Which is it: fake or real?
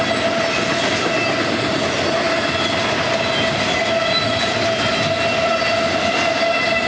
real